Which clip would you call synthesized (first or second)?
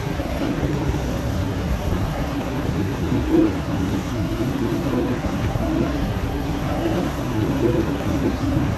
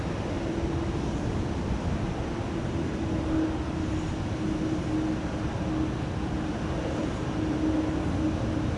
first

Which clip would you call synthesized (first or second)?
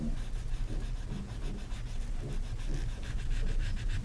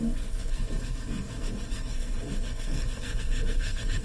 second